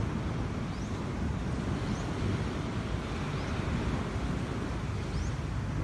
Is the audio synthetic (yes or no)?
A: no